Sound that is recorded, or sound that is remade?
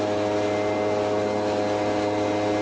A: recorded